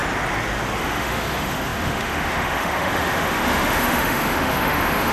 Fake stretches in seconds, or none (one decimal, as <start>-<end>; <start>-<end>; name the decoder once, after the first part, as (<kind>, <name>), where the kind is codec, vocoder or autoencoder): 0.8-5.1 (autoencoder, DAC-VAE)